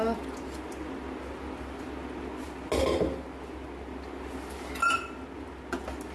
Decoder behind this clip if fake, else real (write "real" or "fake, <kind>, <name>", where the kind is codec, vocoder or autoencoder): real